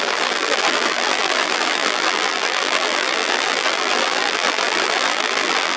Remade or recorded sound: remade